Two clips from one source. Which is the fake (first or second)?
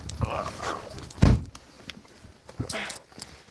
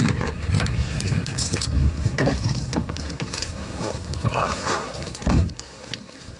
second